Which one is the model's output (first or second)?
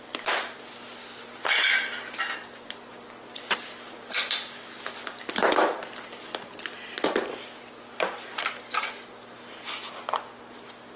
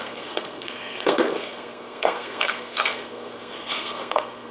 second